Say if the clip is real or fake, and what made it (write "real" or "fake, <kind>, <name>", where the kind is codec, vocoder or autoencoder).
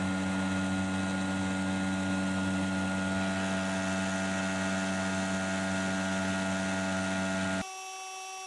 real